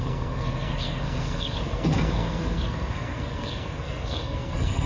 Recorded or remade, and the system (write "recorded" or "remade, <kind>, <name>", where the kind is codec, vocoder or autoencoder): remade, codec, SNAC